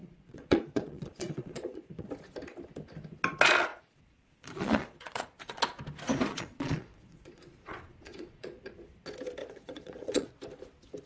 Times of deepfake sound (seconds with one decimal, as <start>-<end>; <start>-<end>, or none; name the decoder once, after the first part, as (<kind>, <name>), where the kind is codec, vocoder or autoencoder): 0.0-2.1 (vocoder, Vocos); 3.7-5.6; 6.3-8.7; 9.4-10.3